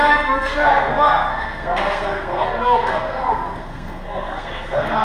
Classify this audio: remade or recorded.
remade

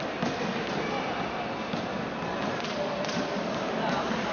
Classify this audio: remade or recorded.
recorded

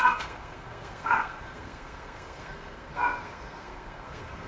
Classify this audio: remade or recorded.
remade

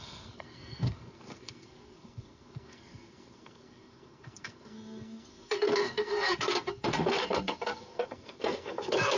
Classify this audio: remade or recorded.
remade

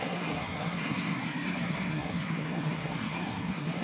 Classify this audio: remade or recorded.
remade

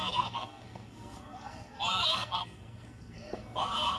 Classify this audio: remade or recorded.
remade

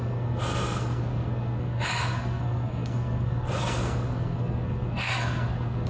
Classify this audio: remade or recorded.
remade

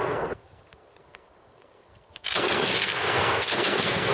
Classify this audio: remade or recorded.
remade